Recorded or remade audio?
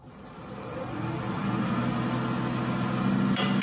recorded